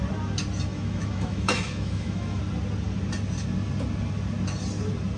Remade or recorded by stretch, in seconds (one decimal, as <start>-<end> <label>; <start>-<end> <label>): 0.0-0.7 recorded; 0.7-2.4 remade; 2.4-5.2 recorded

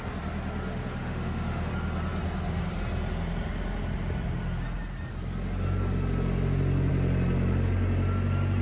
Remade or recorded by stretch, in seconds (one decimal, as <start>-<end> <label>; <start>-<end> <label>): 0.0-1.0 recorded; 1.0-1.7 remade; 1.7-8.6 recorded

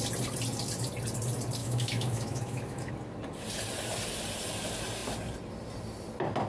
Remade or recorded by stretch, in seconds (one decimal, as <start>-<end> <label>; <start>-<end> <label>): 0.0-1.6 recorded; 1.6-2.9 remade; 2.9-6.5 recorded

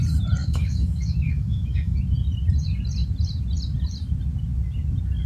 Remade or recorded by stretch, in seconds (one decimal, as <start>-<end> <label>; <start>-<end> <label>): 0.0-0.4 recorded; 0.4-2.0 remade; 2.0-5.3 recorded

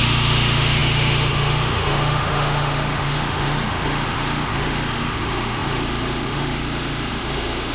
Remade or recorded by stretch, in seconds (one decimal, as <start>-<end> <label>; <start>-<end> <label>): 0.0-7.7 remade

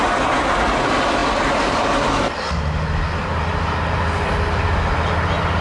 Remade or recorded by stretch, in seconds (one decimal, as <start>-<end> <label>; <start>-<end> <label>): 0.0-5.6 recorded

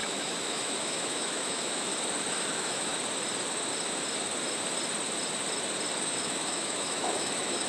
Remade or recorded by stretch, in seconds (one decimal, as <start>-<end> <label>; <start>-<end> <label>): 0.0-1.9 remade; 1.9-2.5 recorded; 2.5-2.9 remade; 2.9-6.0 recorded; 6.0-7.7 remade